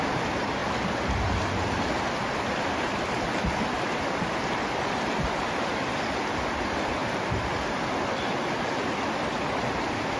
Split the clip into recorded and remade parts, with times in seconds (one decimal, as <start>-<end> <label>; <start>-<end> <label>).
0.0-10.2 recorded